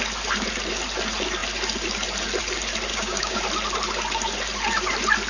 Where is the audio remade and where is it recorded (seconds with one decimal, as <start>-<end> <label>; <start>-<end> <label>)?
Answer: 0.0-2.9 recorded; 2.9-3.4 remade; 3.4-5.3 recorded